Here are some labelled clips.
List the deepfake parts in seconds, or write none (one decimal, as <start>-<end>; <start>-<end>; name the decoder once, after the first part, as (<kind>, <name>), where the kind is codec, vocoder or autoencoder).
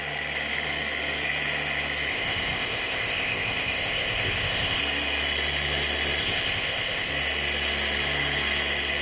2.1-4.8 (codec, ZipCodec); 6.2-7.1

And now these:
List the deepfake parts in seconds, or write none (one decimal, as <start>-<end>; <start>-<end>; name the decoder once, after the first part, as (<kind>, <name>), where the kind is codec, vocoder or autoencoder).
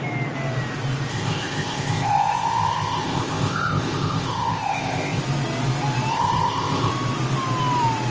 1.1-5.2 (codec, ZipCodec); 6.1-6.9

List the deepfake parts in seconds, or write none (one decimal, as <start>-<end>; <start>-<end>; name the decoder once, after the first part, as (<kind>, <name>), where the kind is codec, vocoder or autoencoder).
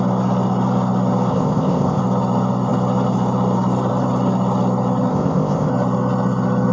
1.3-2.0 (codec, ZipCodec); 5.1-5.7